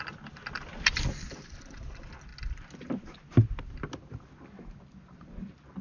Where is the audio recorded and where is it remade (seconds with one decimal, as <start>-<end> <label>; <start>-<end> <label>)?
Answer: 0.0-5.8 recorded